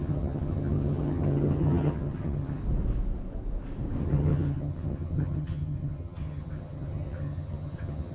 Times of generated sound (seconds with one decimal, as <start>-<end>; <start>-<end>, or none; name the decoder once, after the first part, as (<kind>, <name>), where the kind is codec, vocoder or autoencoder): 0.0-2.6 (vocoder, HiFi-GAN); 4.0-8.1